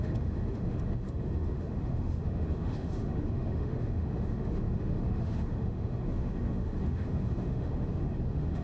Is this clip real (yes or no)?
no